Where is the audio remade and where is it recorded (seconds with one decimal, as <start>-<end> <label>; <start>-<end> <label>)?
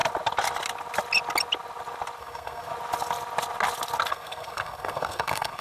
0.0-2.2 recorded; 2.2-2.7 remade; 2.7-4.1 recorded; 4.1-5.6 remade